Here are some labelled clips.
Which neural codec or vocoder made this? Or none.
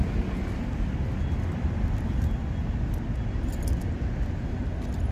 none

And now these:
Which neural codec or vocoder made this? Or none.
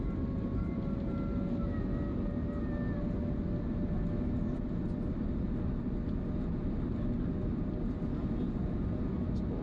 none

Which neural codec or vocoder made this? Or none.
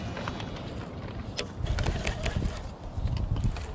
none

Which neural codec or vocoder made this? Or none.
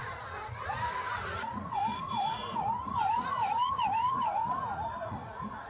vocoder, Vocos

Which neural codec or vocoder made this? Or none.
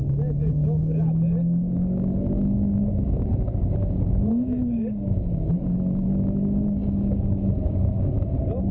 codec, DAC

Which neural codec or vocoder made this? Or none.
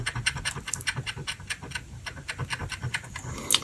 none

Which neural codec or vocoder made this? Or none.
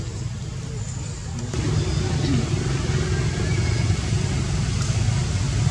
none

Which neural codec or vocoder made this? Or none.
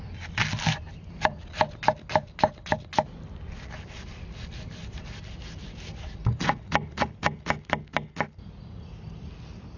none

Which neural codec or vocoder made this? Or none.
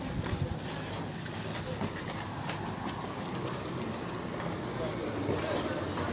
none